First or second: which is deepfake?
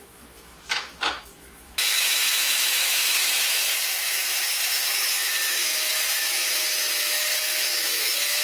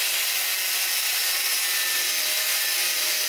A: first